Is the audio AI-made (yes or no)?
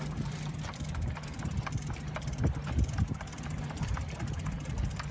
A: no